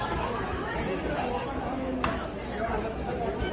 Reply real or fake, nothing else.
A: fake